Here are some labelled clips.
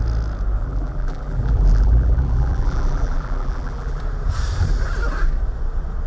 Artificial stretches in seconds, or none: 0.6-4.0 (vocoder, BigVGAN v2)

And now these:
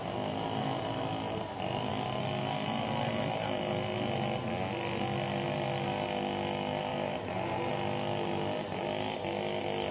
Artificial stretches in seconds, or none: 6.9-7.7 (vocoder, BigVGAN v2)

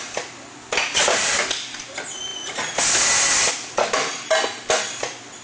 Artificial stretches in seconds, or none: none

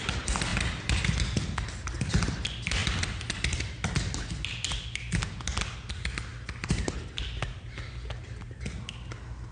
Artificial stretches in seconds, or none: 2.8-4.0 (vocoder, BigVGAN v2)

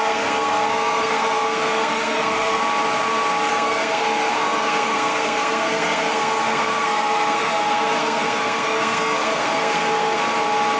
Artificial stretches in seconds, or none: 0.0-2.6 (codec, SNAC); 3.5-10.2

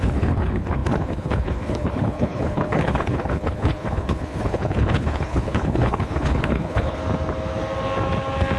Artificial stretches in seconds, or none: 0.0-7.0 (codec, HILCodec)

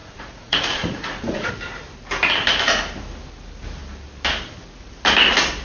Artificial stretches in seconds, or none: 0.0-1.5 (vocoder, Vocos)